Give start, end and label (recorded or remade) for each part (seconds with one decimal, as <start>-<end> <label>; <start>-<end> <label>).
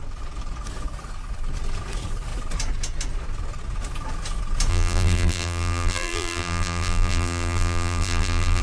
0.0-4.7 recorded; 4.7-8.6 remade